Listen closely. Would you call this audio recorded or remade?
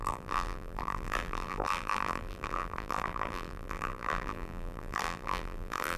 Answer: remade